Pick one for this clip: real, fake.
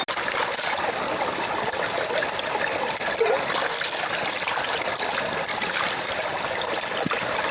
real